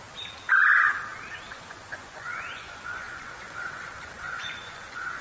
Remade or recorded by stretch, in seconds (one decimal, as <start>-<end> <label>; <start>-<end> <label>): 0.0-1.5 recorded; 1.5-5.2 remade